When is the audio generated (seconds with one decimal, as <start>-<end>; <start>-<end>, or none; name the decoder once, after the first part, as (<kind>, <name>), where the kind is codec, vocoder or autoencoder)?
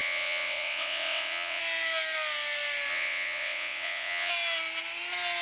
0.0-1.6 (vocoder, WaveNeXt); 2.9-4.3